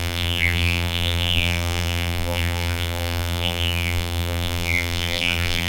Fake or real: fake